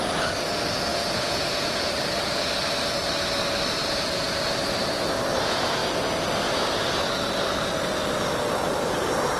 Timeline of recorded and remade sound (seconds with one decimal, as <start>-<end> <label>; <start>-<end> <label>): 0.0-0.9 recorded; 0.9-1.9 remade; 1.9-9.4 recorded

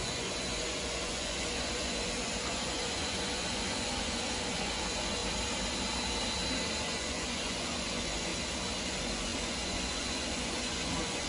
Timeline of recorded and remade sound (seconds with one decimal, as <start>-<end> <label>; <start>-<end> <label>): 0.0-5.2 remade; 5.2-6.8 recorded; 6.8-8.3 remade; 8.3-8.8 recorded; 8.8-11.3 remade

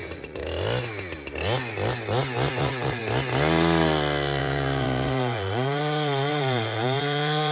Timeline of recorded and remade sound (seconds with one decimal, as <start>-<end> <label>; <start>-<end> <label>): 0.0-0.4 remade; 0.4-2.5 recorded; 2.5-3.0 remade; 3.0-4.4 recorded; 4.4-7.5 remade

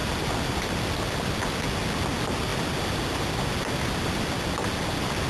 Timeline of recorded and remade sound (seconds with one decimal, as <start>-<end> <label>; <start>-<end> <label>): 0.0-5.3 recorded

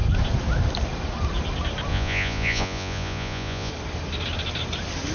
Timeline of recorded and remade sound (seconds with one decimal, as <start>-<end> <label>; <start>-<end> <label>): 0.0-1.9 recorded; 1.9-3.7 remade; 3.7-5.1 recorded